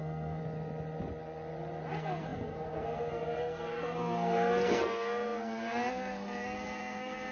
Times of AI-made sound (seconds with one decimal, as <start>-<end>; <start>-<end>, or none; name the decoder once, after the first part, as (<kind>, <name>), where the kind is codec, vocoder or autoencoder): 0.0-0.4 (codec, SNAC); 1.9-7.3